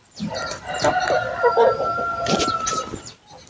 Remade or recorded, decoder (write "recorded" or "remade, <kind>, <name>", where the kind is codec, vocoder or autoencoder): recorded